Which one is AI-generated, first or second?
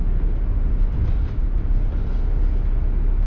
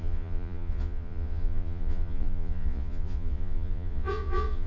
second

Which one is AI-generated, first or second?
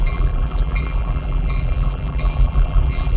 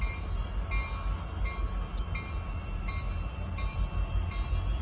first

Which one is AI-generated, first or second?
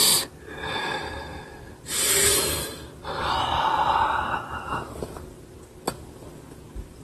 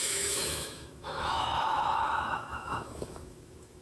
second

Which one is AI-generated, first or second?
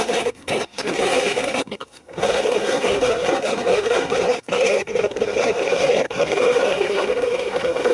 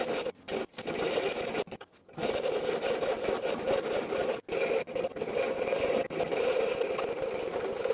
first